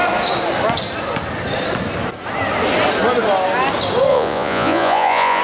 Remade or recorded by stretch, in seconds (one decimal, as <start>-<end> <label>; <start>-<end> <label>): 0.0-4.1 recorded; 4.1-5.4 remade